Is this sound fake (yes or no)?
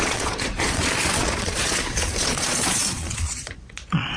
yes